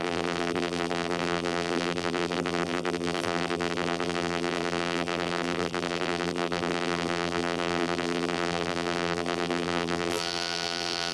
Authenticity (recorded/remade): remade